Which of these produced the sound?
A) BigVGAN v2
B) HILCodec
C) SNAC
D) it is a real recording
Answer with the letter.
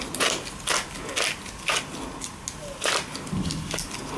D